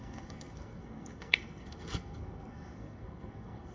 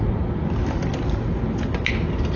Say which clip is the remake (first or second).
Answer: first